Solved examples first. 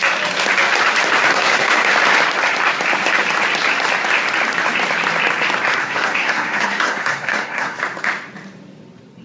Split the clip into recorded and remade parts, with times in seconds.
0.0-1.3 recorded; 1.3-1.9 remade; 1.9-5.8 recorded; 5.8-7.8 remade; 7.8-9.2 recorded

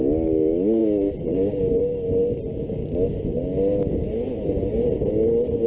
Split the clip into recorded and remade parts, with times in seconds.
0.0-5.7 recorded

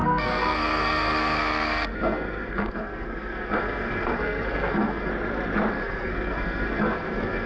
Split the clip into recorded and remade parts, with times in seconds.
0.0-5.1 remade; 5.1-5.7 recorded; 5.7-7.5 remade

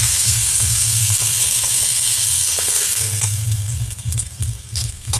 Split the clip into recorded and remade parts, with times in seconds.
0.0-5.2 remade

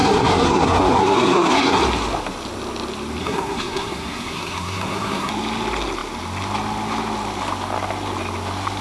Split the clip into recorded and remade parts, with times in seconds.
0.0-1.8 remade; 1.8-3.2 recorded; 3.2-5.3 remade; 5.3-8.8 recorded

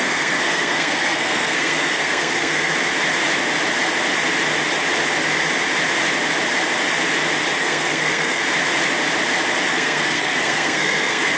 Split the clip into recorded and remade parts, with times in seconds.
0.0-2.7 remade; 2.7-7.6 recorded; 7.6-8.4 remade; 8.4-9.7 recorded; 9.7-11.4 remade

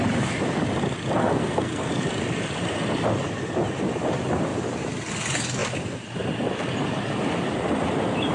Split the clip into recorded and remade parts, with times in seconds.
0.0-1.2 recorded; 1.2-1.9 remade; 1.9-8.3 recorded

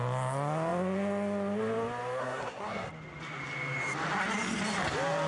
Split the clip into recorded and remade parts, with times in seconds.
0.0-2.2 recorded; 2.2-2.9 remade; 2.9-5.3 recorded